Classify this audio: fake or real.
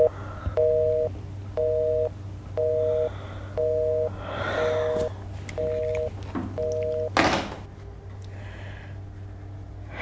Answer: real